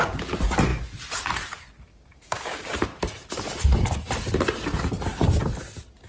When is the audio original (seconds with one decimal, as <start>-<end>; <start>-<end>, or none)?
0.0-1.9; 2.7-6.1